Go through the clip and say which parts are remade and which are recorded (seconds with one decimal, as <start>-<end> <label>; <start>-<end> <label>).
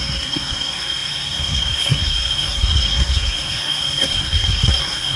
0.0-5.2 remade